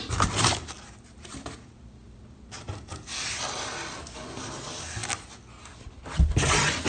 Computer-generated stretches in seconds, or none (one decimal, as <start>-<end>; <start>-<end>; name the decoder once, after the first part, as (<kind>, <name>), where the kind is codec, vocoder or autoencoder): none